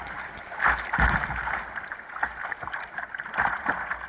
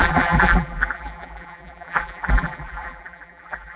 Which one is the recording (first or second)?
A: first